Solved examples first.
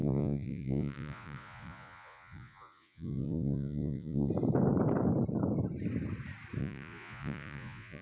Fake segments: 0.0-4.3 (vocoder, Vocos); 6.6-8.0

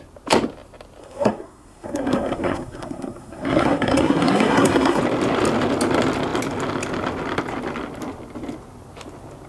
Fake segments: 1.0-5.0 (codec, SNAC)

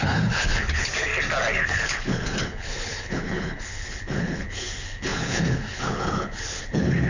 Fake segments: 0.0-1.1 (codec, HILCodec); 1.6-7.1

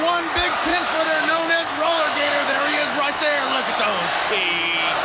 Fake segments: 0.7-3.7 (autoencoder, DAC-VAE)

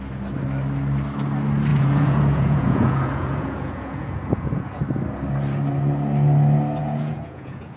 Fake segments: 1.7-4.8 (vocoder, Vocos); 6.8-7.8

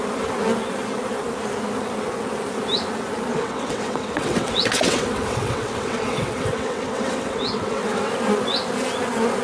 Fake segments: 3.3-8.1 (vocoder, WaveNeXt)

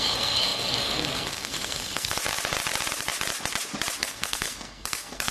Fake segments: 0.0-2.2 (codec, SNAC); 4.0-5.3